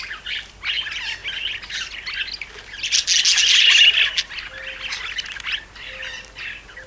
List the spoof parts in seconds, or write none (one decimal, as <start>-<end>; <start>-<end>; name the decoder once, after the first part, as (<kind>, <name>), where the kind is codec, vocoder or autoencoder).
none